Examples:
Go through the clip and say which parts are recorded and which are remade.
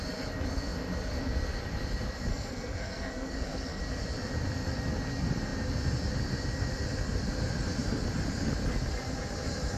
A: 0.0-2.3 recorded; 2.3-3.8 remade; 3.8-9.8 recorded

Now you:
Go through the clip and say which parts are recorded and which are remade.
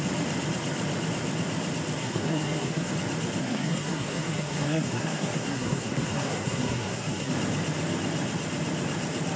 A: 0.0-2.0 recorded; 2.0-2.9 remade; 2.9-3.4 recorded; 3.4-7.3 remade; 7.3-9.4 recorded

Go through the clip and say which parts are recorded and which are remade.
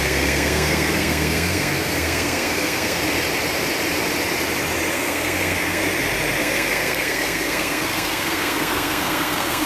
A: 0.0-3.0 remade; 3.0-4.9 recorded; 4.9-5.8 remade; 5.8-6.4 recorded; 6.4-9.7 remade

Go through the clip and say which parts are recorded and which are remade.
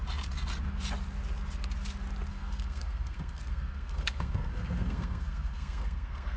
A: 0.0-2.3 recorded; 2.3-6.4 remade